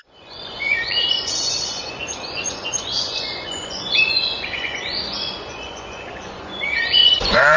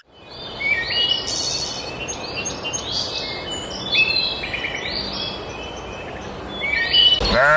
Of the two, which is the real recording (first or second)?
second